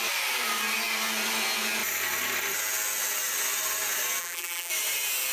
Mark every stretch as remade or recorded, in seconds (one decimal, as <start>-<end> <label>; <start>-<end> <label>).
0.0-4.2 recorded; 4.2-4.7 remade; 4.7-5.3 recorded